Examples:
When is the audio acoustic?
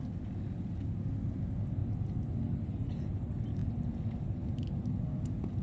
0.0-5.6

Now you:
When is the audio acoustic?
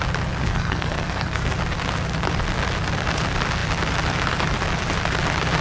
0.0-0.4; 1.6-5.6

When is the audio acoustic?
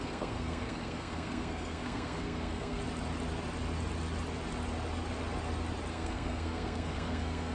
2.8-5.9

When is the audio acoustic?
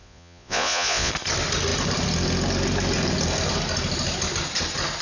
1.1-5.0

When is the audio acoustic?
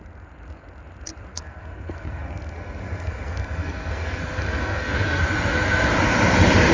0.0-1.3; 5.2-6.7